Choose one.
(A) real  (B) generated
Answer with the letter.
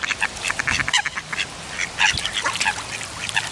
A